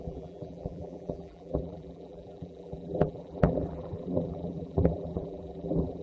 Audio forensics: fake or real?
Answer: fake